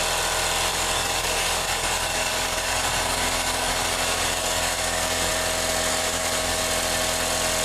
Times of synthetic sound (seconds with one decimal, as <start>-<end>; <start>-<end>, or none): 0.7-5.3; 5.9-6.6